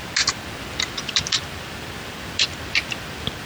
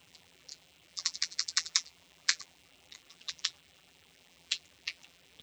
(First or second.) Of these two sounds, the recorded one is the first